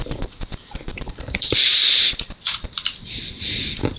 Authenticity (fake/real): fake